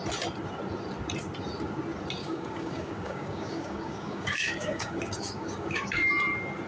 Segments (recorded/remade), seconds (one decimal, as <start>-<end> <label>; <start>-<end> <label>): 0.0-2.2 recorded; 2.2-6.1 remade; 6.1-6.7 recorded